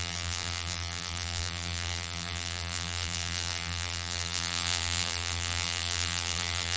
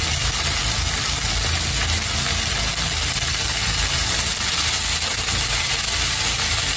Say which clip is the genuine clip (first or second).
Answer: second